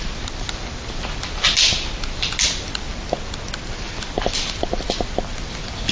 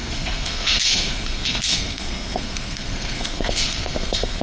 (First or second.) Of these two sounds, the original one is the first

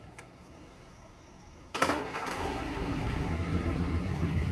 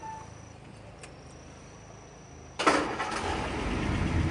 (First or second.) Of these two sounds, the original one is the second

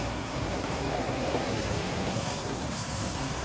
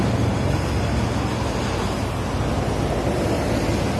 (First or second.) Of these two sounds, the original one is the second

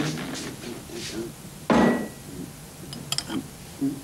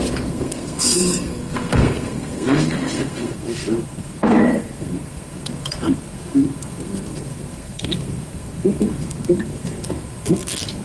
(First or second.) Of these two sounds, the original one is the first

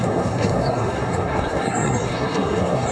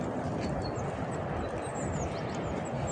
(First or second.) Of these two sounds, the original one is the second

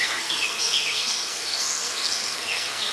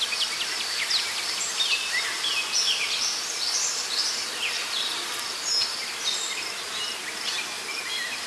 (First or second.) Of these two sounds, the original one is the second